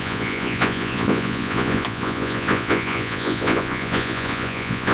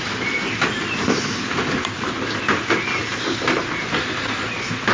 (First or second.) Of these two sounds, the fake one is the first